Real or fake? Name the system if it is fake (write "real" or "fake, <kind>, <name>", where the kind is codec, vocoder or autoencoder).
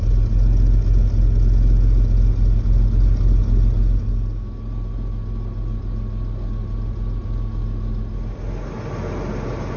real